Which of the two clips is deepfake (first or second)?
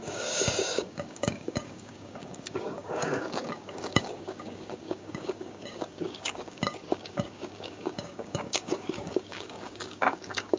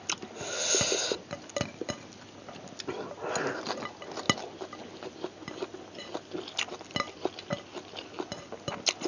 first